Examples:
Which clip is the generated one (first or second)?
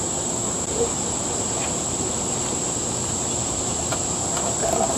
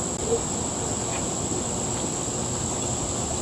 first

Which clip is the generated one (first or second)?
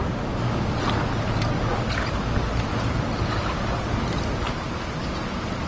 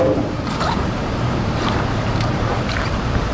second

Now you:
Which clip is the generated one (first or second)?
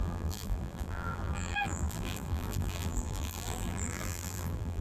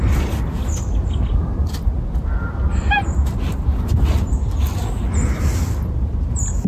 first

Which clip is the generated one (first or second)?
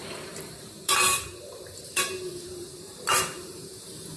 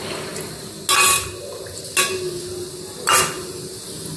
first